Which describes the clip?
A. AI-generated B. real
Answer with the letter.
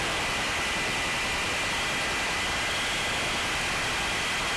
B